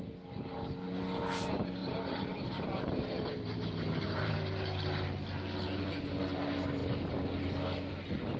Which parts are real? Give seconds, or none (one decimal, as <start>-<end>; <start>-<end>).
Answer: 0.0-1.8; 4.3-8.4